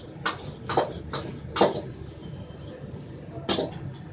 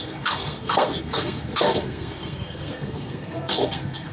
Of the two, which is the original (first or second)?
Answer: first